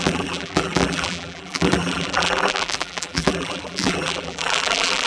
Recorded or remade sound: remade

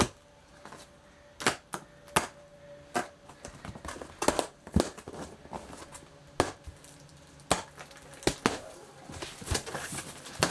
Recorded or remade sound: recorded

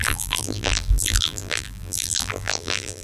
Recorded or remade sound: remade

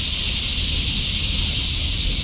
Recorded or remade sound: recorded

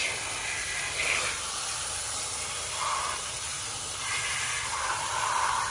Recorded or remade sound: recorded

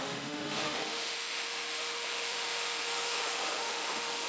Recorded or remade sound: remade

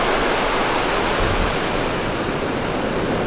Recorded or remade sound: recorded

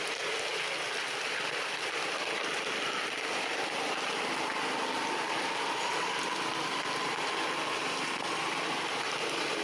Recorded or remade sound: recorded